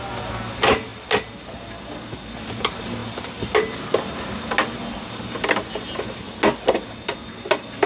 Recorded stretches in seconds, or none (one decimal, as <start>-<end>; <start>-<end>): 0.0-7.9